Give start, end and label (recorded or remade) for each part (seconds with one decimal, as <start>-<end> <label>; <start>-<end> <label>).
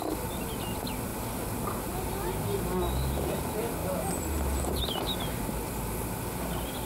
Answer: 0.0-6.9 recorded